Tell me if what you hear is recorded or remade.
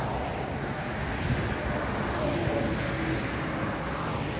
recorded